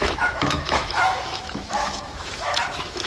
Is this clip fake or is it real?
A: fake